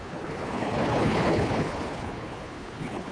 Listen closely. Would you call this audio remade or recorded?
remade